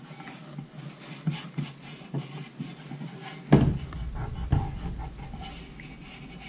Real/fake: real